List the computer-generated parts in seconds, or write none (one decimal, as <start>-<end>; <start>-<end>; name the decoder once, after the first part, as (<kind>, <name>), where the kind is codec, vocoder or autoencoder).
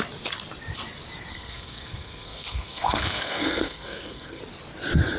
1.3-4.4 (codec, SNAC)